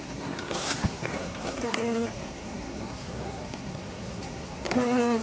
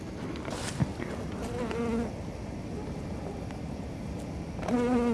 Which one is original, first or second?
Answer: second